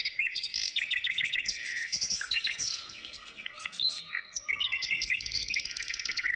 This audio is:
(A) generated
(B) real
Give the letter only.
A